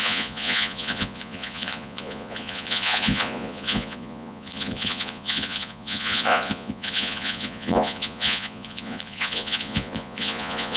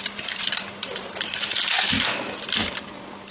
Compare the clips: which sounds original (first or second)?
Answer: second